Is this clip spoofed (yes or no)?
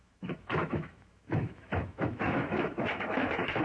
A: yes